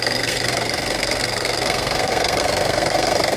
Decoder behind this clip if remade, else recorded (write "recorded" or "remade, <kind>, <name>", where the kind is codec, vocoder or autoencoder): remade, codec, SNAC